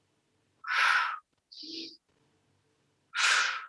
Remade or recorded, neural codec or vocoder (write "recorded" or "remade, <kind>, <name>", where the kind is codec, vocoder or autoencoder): recorded